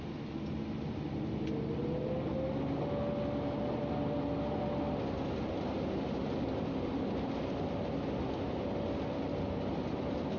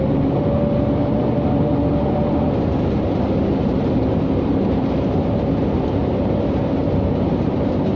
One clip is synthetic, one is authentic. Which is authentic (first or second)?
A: first